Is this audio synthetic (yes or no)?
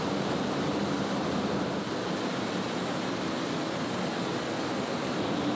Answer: no